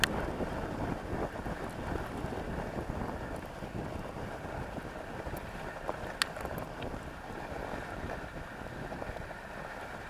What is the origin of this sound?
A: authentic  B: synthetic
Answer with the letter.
A